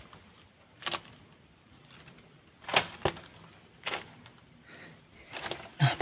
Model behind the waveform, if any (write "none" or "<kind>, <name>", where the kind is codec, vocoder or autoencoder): none